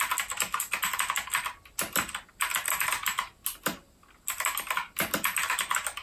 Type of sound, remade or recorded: recorded